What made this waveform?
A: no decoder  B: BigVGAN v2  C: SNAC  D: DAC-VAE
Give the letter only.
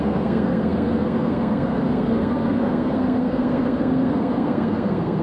C